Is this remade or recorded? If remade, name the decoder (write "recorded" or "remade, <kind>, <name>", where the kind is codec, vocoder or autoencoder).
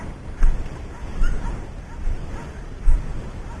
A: remade, vocoder, BigVGAN v2